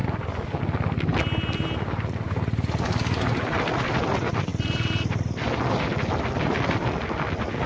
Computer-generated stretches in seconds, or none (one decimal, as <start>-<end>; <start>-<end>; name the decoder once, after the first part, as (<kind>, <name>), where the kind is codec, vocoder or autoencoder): none